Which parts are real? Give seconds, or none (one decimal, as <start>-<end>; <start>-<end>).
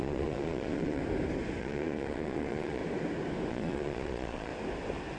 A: 1.0-1.6; 2.8-3.5; 4.5-5.2